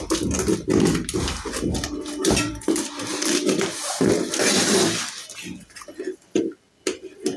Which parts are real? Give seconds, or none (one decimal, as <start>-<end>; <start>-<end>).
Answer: 0.0-2.2; 3.9-7.4